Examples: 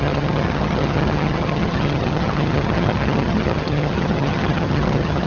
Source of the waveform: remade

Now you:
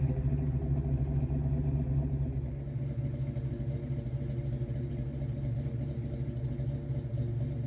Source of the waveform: recorded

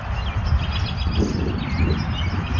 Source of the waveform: recorded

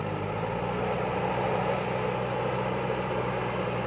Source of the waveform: recorded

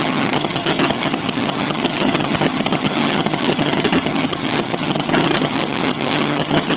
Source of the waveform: remade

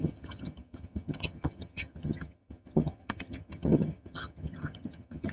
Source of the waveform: remade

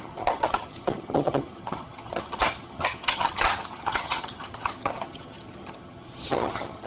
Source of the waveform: remade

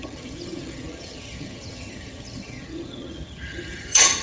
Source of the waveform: remade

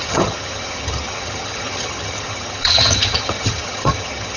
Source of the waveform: remade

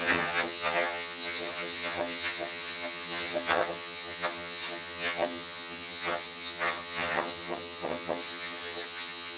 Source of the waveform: remade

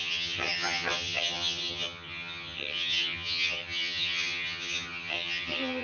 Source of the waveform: remade